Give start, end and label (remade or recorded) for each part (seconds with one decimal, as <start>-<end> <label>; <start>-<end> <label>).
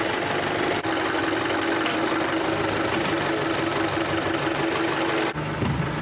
0.0-1.2 recorded; 1.2-2.1 remade; 2.1-6.0 recorded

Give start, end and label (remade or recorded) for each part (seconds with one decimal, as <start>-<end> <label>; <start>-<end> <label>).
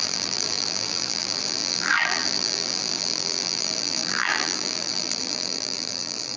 0.0-6.4 remade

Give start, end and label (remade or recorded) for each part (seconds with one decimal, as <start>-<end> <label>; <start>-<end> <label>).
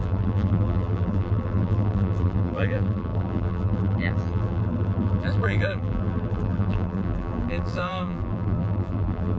0.0-9.4 remade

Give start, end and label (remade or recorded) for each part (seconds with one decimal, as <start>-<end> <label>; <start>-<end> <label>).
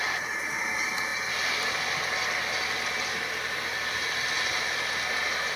0.0-5.6 recorded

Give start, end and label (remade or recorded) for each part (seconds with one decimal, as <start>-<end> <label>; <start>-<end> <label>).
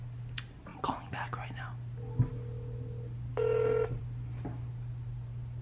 0.0-0.7 recorded; 0.7-1.6 remade; 1.6-5.6 recorded